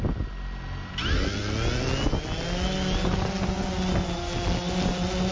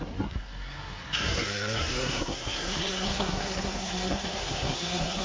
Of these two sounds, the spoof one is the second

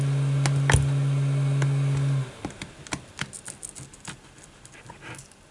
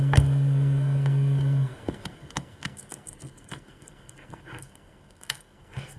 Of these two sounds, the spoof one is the second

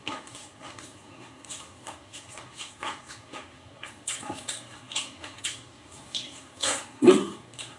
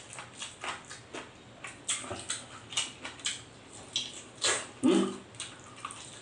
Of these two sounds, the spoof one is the first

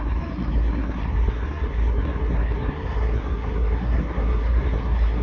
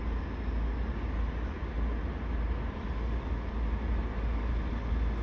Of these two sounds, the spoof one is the first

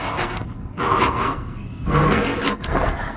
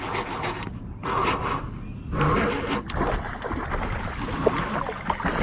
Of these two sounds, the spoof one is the first